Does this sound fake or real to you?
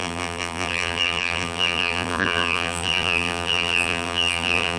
fake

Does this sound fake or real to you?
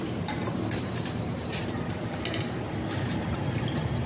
fake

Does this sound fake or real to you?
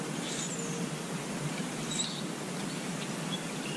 real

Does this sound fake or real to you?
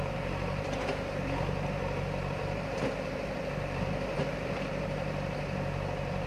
fake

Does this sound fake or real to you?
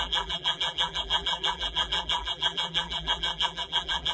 fake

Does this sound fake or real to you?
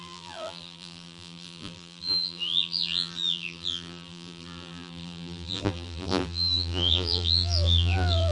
fake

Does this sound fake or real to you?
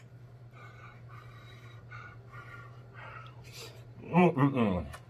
fake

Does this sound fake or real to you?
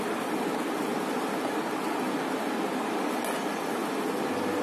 real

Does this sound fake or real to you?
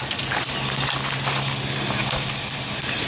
real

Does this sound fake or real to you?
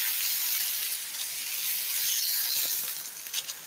real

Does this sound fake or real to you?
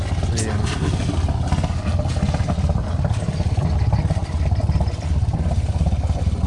real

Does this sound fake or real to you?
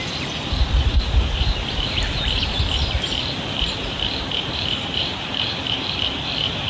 fake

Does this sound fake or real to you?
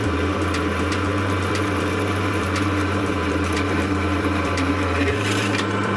fake